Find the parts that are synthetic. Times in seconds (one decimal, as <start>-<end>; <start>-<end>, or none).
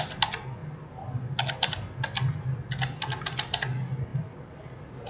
4.1-5.1